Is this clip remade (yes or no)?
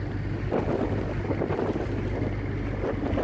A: no